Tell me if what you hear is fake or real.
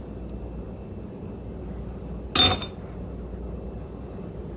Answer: real